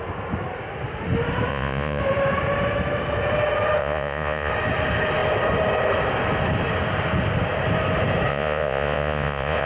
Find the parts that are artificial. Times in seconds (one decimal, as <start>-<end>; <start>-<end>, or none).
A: 1.5-2.0; 3.8-4.5; 8.3-9.7